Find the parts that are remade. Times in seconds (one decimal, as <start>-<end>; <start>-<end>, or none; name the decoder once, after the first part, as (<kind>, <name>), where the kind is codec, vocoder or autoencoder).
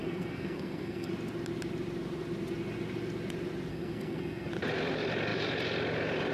0.0-1.1 (codec, SNAC); 3.7-4.5